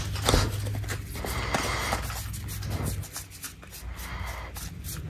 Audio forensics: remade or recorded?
recorded